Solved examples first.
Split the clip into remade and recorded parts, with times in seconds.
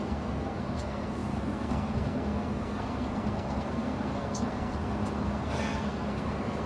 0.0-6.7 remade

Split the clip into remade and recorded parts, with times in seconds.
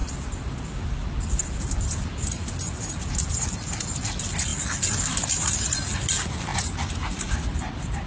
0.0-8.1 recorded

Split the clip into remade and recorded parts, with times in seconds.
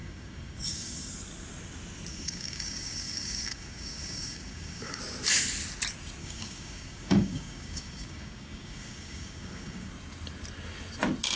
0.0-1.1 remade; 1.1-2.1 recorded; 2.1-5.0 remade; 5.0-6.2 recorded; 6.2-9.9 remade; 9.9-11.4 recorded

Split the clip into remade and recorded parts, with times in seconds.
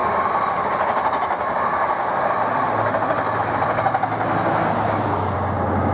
0.0-5.9 recorded